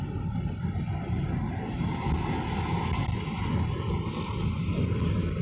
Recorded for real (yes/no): yes